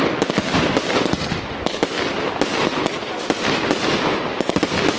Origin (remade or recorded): recorded